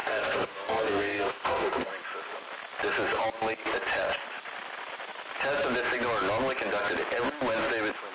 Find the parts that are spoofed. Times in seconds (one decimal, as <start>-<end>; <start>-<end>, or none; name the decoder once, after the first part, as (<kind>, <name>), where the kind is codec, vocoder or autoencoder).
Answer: 0.0-1.9 (codec, SNAC)